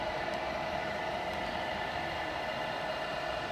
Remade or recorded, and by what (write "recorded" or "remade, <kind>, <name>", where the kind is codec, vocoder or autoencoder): recorded